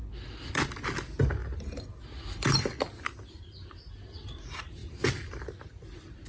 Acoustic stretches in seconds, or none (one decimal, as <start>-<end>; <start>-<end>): 1.4-4.2; 4.8-5.7